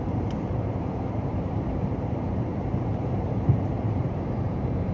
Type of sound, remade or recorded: remade